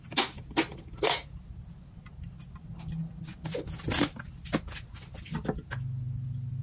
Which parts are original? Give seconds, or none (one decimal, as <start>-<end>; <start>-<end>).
0.0-6.6